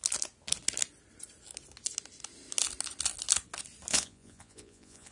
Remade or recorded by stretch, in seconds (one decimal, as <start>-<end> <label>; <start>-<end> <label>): 0.0-3.9 recorded; 3.9-5.1 remade